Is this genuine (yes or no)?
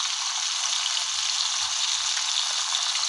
yes